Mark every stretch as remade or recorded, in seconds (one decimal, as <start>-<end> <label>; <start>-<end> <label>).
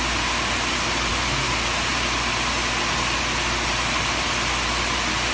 0.0-5.3 recorded